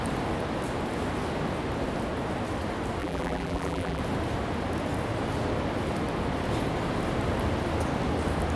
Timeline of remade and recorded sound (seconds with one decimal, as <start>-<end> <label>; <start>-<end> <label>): 0.0-3.0 recorded; 3.0-4.0 remade; 4.0-8.6 recorded